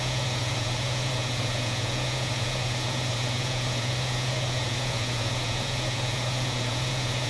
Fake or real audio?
fake